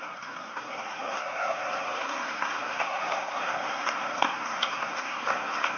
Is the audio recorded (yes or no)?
no